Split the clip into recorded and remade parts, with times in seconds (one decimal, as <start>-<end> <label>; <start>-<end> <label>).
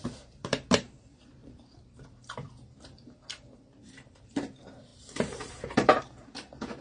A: 0.0-6.8 remade